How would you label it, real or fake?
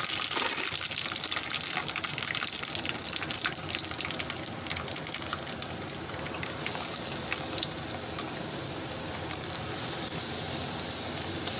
real